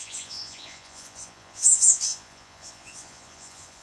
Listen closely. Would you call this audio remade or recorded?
remade